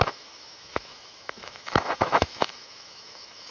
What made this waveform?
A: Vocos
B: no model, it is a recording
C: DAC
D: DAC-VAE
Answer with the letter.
D